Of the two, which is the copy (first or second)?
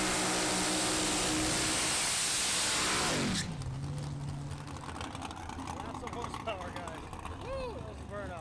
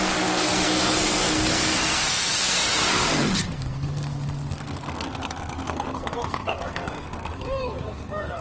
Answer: second